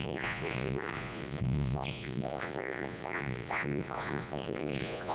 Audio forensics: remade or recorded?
remade